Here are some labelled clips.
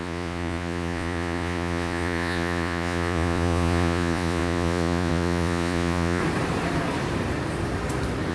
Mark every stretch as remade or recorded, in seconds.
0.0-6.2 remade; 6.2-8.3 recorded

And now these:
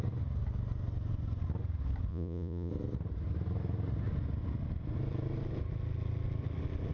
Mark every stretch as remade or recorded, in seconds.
0.0-2.1 recorded; 2.1-2.7 remade; 2.7-6.9 recorded

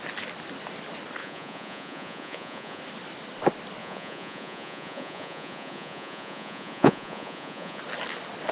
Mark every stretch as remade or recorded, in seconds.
0.0-1.2 recorded; 1.2-2.8 remade; 2.8-3.8 recorded; 3.8-7.8 remade; 7.8-8.5 recorded